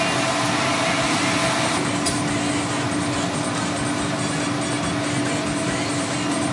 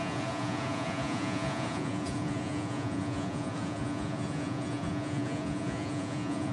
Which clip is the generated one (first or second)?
second